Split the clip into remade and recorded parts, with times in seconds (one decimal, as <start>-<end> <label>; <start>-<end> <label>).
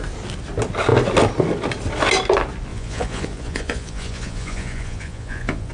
0.0-2.7 recorded; 2.7-5.7 remade